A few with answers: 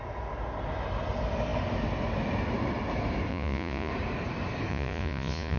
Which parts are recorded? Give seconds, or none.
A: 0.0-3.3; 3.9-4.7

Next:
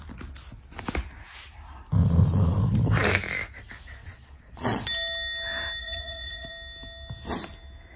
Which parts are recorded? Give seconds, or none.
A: 0.0-2.0; 2.6-4.0; 4.8-5.8; 6.5-8.0

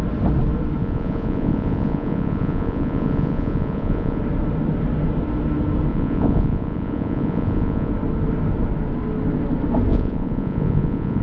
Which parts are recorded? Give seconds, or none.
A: 0.0-0.8; 4.2-5.9; 7.9-9.9